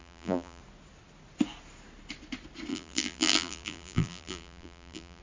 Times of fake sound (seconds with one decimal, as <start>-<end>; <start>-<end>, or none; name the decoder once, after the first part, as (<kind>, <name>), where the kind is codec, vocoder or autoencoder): 0.0-0.6 (vocoder, BigVGAN v2); 2.7-5.2